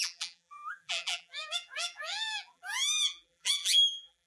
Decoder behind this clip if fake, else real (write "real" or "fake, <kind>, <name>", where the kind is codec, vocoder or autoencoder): fake, vocoder, BigVGAN v2